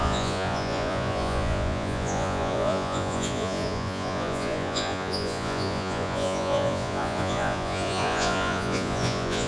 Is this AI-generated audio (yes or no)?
yes